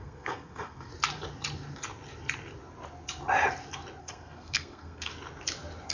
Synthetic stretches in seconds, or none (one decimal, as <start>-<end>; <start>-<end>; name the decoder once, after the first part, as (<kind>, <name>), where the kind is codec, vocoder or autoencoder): 0.0-0.9 (codec, SNAC); 4.0-5.1